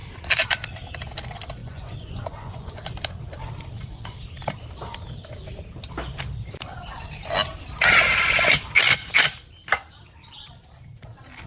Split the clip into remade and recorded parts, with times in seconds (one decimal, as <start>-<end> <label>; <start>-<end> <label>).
0.0-1.6 recorded; 1.6-2.8 remade; 2.8-11.5 recorded